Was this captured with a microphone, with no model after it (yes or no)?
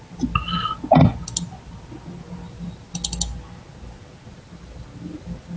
yes